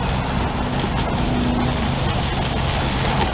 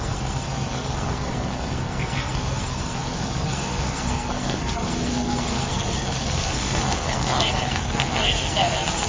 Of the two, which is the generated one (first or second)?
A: second